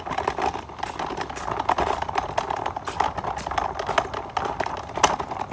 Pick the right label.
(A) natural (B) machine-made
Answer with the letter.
A